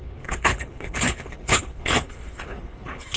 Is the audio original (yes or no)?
no